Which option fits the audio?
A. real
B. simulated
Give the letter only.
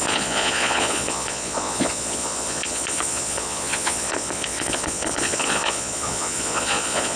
B